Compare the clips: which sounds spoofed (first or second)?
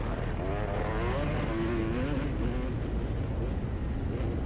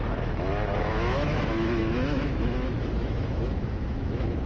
second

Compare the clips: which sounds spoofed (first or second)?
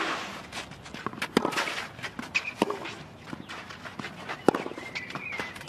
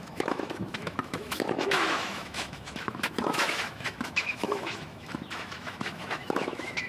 second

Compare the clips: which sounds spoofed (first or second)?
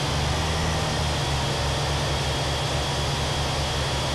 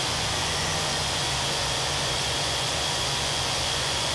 second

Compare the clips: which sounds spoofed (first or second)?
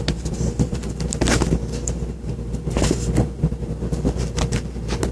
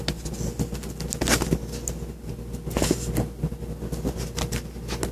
first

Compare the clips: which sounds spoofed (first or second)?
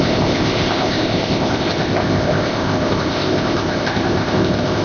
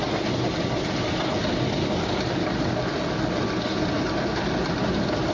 first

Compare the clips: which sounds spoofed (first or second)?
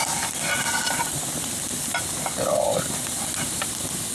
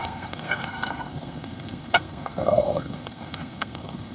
second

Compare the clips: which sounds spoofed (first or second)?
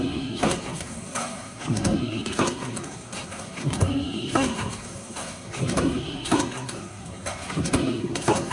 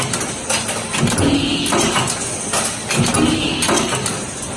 first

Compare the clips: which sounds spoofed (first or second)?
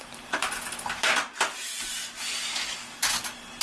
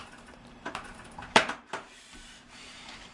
second